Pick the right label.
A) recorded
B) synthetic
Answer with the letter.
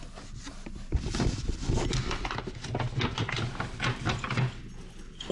A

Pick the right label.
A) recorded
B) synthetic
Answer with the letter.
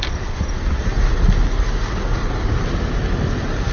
A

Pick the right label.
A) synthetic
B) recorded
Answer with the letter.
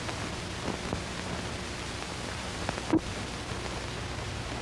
B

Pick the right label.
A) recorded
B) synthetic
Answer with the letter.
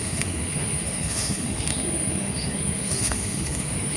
B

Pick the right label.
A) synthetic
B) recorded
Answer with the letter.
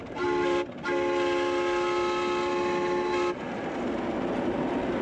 B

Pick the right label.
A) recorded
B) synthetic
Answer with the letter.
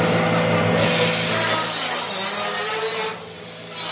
A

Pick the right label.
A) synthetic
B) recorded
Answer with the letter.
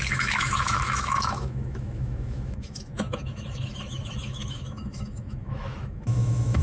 A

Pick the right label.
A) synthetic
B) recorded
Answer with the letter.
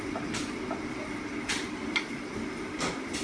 B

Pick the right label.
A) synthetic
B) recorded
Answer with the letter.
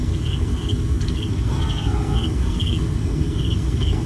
A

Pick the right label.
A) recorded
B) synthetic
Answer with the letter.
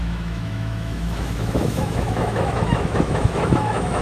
B